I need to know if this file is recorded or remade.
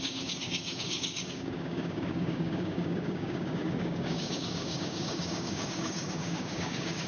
remade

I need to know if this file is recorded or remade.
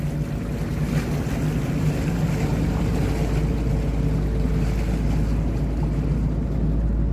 recorded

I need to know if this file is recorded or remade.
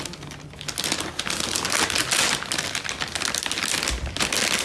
recorded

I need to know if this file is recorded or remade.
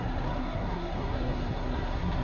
remade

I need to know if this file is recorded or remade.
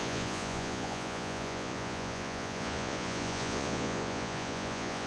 remade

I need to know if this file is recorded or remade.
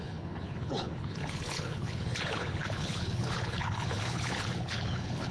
remade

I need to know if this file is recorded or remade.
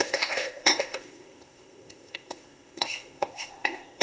remade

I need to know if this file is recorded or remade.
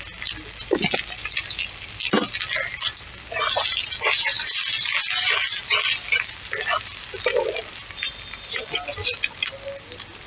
recorded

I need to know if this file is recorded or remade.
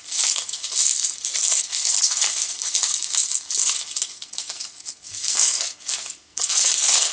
remade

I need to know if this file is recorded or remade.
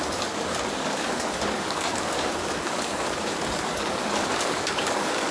remade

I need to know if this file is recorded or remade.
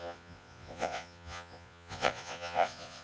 remade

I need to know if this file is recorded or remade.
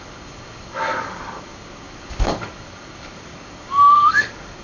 remade